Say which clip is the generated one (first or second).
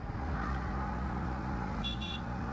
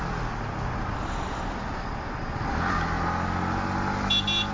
first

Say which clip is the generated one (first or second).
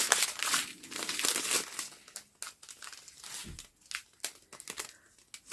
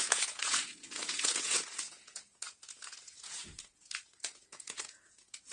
second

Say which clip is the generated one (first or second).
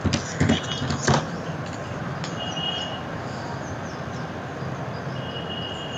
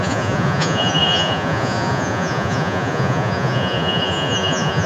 second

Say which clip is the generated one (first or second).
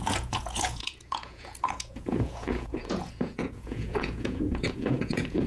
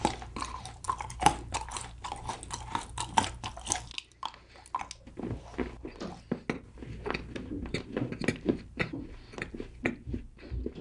first